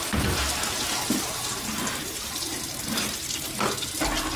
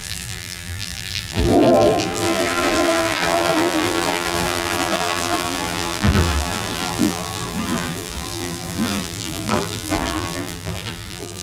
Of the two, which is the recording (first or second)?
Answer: first